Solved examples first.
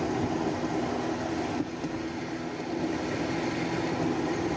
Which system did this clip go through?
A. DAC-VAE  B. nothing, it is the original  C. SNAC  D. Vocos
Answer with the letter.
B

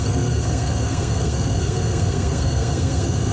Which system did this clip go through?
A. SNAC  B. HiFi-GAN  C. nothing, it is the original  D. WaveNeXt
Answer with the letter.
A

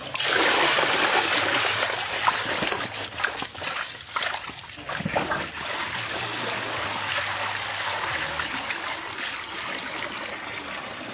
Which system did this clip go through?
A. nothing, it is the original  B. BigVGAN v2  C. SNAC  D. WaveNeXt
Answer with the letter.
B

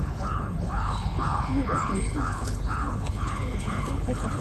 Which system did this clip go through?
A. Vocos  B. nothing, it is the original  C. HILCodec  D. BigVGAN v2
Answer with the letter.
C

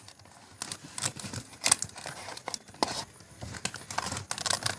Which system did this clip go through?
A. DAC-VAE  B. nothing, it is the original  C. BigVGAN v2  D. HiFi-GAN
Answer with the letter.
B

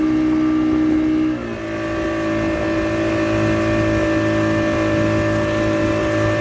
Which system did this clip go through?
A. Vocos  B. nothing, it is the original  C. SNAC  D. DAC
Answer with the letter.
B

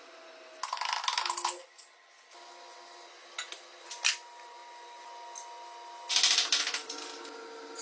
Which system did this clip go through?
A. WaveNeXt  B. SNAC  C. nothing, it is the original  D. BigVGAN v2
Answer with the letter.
C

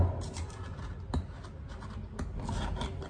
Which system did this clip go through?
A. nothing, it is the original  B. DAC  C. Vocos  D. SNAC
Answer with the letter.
A